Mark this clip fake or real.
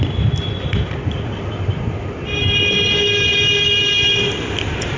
real